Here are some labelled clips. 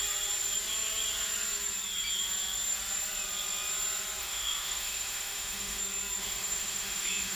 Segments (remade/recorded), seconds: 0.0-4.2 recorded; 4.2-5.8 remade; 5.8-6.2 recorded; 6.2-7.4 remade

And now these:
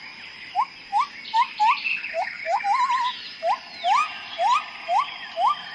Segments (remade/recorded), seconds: 0.0-1.9 recorded; 1.9-2.6 remade; 2.6-5.7 recorded

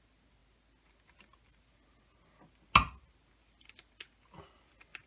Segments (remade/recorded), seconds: 0.0-5.1 recorded

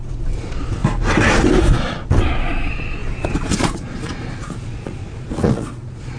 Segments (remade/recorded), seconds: 0.0-0.8 remade; 0.8-1.6 recorded; 1.6-6.2 remade

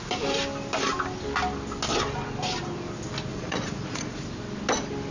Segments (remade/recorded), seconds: 0.0-3.3 recorded; 3.3-4.2 remade; 4.2-5.1 recorded